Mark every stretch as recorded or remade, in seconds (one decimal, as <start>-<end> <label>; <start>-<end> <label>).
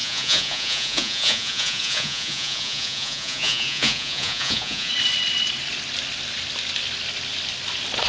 0.0-4.9 remade; 4.9-8.1 recorded